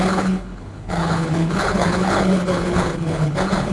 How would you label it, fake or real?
fake